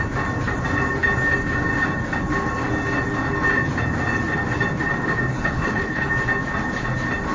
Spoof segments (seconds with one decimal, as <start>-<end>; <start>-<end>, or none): 5.3-6.1